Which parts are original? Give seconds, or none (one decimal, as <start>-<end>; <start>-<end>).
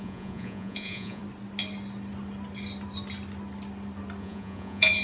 1.2-4.2